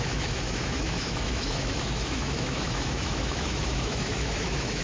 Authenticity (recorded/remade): remade